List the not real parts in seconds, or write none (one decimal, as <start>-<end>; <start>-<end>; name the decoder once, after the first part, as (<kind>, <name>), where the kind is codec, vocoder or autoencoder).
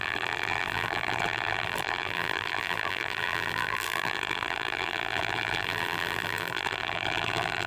0.0-7.7 (vocoder, BigVGAN v2)